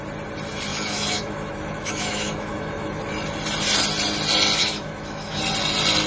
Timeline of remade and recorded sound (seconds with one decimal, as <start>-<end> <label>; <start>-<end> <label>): 0.0-0.7 recorded; 0.7-3.0 remade; 3.0-4.6 recorded; 4.6-5.4 remade; 5.4-6.1 recorded